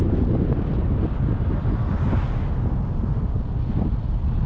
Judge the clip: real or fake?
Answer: real